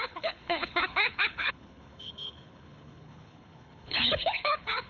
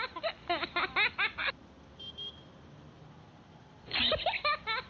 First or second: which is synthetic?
first